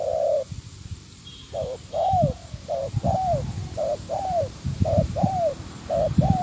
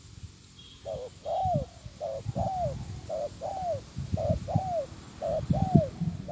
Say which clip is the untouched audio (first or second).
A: second